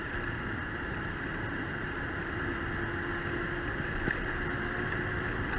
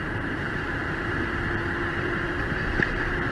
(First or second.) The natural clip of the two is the first